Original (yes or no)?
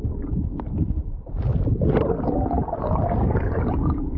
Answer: yes